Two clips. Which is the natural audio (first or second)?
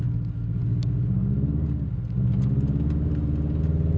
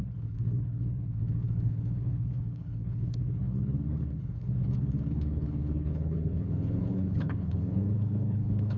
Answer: first